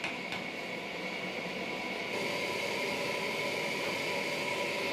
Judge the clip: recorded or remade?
recorded